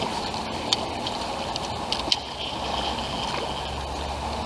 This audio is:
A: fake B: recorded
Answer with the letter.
B